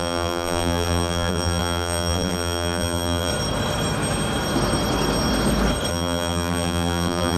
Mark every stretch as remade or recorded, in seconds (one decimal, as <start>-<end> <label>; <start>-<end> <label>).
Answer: 0.0-3.3 remade; 3.3-5.9 recorded; 5.9-7.4 remade